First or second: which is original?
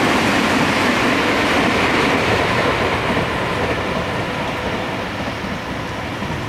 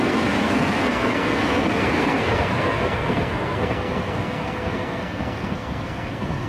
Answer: first